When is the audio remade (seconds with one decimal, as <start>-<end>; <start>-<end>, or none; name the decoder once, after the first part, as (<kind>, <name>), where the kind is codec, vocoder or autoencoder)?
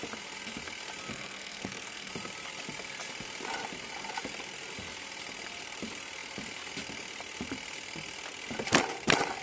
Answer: 1.1-2.1 (codec, SNAC)